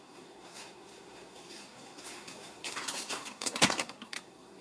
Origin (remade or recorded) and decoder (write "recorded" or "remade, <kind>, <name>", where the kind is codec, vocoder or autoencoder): remade, codec, SNAC